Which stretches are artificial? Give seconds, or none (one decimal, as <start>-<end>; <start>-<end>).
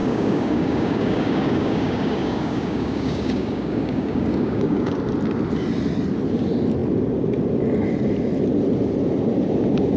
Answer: 0.0-5.0